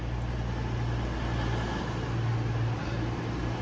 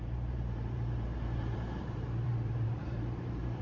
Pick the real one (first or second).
first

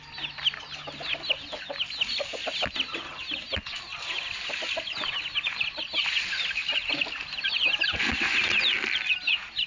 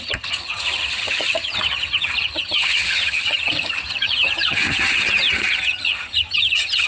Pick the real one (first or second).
first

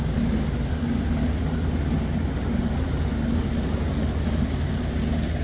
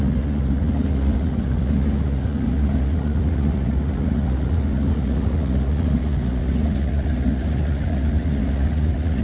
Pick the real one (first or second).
first